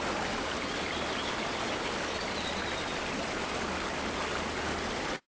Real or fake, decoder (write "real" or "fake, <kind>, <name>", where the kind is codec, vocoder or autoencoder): real